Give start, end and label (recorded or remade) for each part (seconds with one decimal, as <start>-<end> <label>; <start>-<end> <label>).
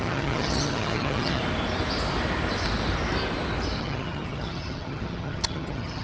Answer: 0.0-1.4 remade; 1.4-3.8 recorded; 3.8-6.0 remade